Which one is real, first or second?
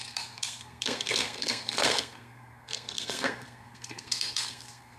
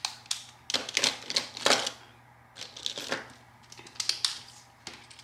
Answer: second